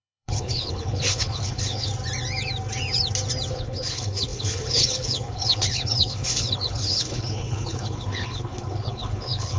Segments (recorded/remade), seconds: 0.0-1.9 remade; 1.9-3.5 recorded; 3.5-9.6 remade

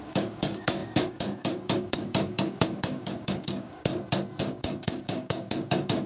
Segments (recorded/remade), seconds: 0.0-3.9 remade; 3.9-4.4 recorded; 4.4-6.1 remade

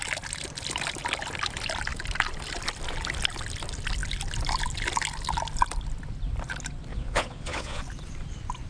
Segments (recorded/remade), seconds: 0.0-6.9 recorded; 6.9-7.8 remade; 7.8-8.7 recorded

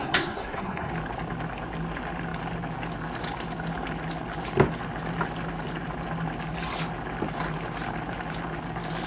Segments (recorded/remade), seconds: 0.0-0.9 remade; 0.9-9.1 recorded

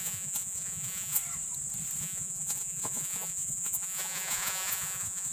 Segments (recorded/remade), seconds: 0.0-1.2 remade; 1.2-2.0 recorded; 2.0-5.3 remade

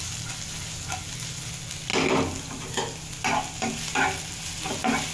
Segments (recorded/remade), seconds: 0.0-5.1 recorded